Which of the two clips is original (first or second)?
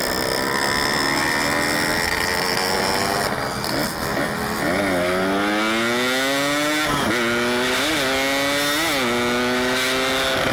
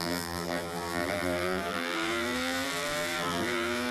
first